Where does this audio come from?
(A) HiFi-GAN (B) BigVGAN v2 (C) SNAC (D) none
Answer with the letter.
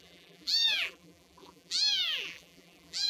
B